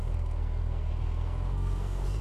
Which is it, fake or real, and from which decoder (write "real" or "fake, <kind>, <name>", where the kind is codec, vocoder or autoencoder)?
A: fake, codec, SNAC